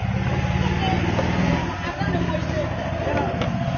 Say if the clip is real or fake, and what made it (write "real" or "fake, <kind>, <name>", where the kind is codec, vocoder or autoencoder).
real